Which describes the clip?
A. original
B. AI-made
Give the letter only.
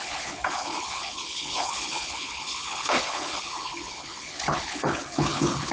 B